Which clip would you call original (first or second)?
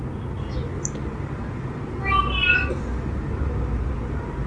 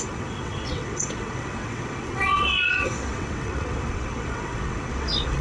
first